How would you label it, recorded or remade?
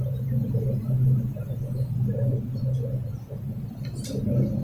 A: recorded